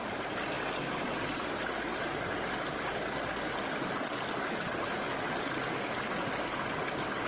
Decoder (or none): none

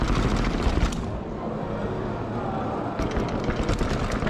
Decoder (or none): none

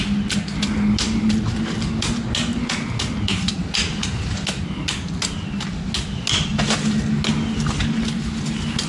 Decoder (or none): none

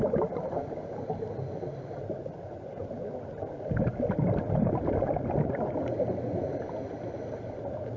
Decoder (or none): none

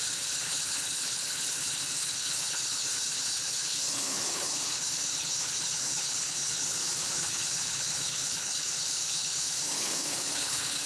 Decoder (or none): codec, HILCodec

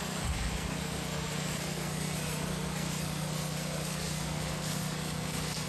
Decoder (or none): codec, SNAC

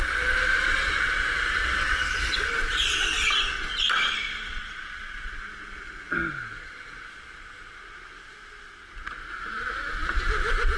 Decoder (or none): none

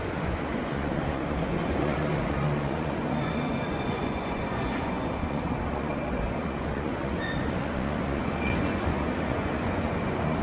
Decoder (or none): vocoder, Vocos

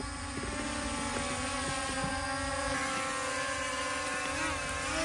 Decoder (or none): none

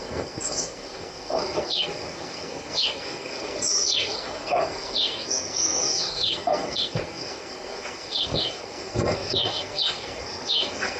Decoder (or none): codec, SNAC